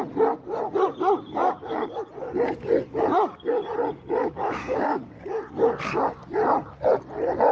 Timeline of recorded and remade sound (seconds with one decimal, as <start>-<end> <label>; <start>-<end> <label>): 0.0-4.2 recorded; 4.2-5.1 remade; 5.1-7.5 recorded